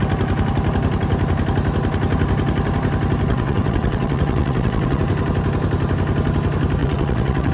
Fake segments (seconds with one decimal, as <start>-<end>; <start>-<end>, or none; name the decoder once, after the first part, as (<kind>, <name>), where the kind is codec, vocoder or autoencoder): 3.3-5.0 (vocoder, WaveNeXt); 6.8-7.5